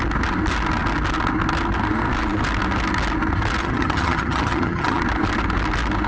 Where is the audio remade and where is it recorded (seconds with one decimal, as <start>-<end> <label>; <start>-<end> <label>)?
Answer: 0.0-3.6 recorded; 3.6-5.0 remade; 5.0-6.1 recorded